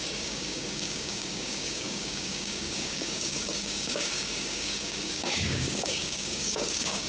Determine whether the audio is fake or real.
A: fake